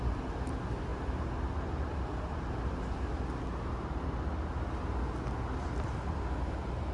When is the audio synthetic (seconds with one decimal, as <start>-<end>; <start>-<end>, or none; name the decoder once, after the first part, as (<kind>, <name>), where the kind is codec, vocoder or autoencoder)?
none